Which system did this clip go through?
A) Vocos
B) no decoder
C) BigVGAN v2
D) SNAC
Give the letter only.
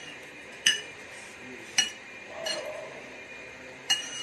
C